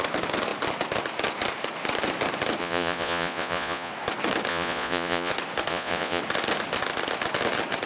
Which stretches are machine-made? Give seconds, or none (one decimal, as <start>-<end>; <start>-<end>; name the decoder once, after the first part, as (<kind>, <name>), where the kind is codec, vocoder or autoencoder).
2.6-3.9 (vocoder, Vocos); 4.5-5.3; 5.7-6.2